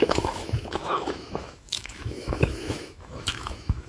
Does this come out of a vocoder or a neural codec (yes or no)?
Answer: yes